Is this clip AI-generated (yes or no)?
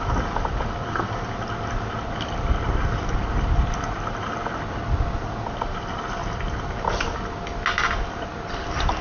no